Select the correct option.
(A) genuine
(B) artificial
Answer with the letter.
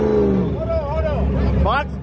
A